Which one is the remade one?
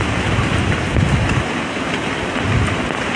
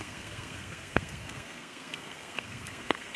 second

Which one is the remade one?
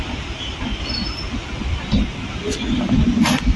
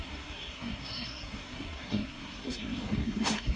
second